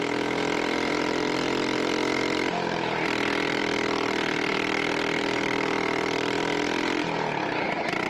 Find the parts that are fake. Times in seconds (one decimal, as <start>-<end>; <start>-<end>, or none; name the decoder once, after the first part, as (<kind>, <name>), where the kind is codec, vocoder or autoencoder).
none